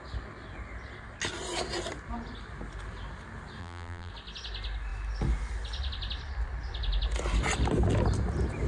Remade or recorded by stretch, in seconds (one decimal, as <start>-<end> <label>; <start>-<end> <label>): 0.0-3.6 recorded; 3.6-4.1 remade; 4.1-8.7 recorded